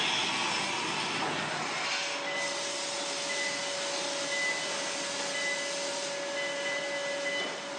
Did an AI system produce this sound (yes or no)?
no